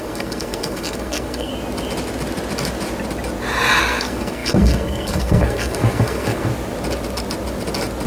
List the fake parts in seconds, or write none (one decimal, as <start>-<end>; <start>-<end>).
0.0-1.5; 3.8-6.5